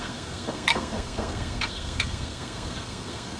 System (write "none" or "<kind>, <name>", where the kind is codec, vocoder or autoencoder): codec, SNAC